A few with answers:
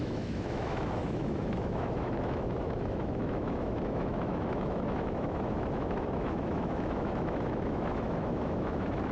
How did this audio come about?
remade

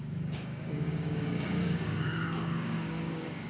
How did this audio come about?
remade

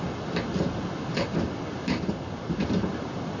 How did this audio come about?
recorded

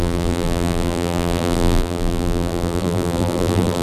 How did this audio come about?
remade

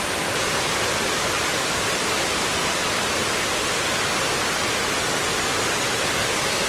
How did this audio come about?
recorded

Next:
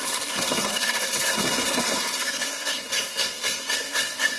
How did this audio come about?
remade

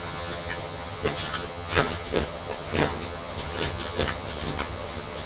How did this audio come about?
remade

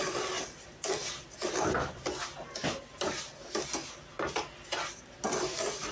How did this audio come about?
recorded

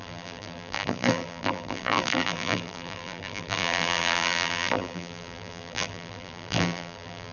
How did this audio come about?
remade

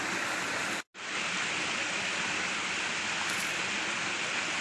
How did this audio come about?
recorded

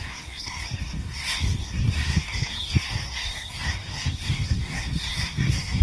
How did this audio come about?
remade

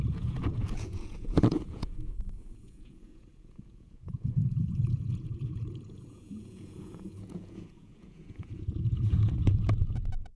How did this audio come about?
remade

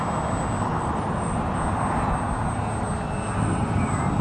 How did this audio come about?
recorded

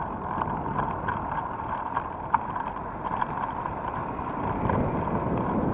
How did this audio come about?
recorded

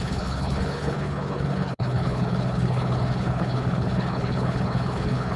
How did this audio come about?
remade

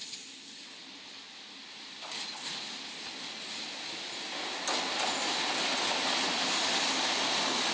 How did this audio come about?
recorded